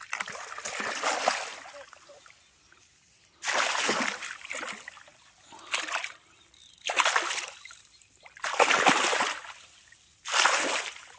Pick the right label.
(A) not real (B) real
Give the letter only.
B